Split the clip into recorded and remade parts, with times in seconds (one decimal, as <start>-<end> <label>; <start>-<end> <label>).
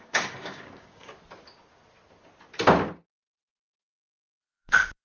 0.0-1.1 remade; 1.1-4.0 recorded; 4.0-5.0 remade